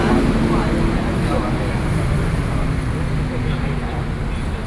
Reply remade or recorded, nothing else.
recorded